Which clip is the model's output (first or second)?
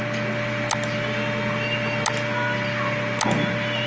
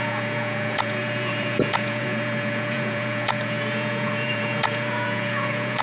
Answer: second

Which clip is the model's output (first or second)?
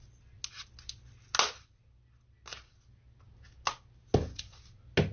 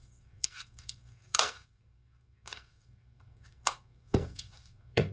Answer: second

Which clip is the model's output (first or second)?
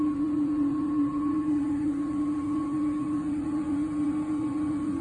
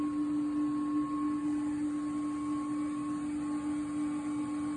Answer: first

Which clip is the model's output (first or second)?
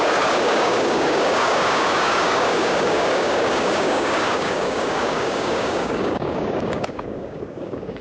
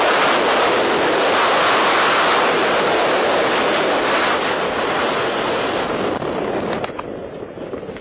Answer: first